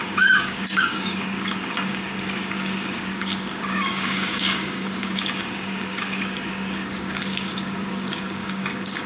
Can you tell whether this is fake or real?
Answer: fake